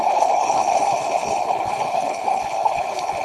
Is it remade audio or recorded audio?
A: remade